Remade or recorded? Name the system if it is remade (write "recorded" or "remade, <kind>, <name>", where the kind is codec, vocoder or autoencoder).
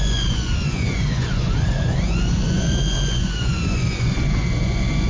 remade, vocoder, Vocos